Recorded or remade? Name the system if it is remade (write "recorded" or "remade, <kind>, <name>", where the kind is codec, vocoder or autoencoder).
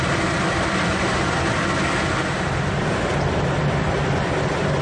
recorded